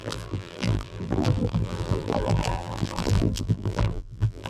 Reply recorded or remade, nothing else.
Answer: remade